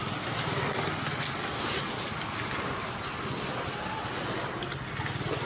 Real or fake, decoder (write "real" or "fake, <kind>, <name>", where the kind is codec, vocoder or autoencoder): real